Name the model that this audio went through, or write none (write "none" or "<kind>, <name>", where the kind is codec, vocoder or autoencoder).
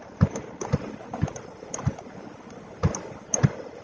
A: none